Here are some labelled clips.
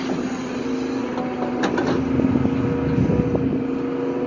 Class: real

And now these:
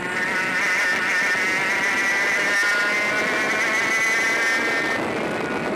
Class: real